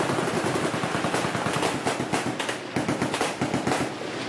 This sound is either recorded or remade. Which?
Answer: recorded